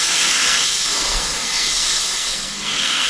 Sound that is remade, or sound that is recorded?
remade